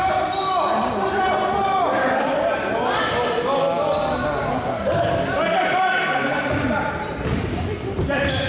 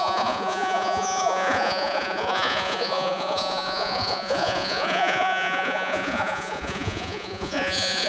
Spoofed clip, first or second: second